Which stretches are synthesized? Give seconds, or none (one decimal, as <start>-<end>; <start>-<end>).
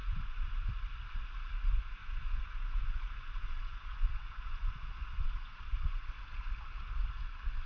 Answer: 0.0-0.7; 2.0-6.1